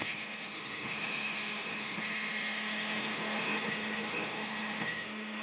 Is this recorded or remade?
remade